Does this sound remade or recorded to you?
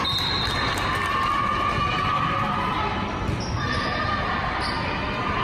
recorded